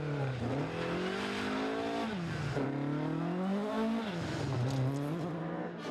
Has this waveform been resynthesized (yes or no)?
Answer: no